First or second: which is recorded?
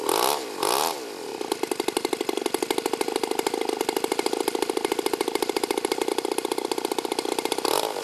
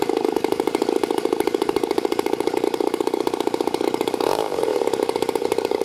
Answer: first